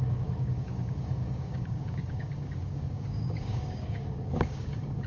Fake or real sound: fake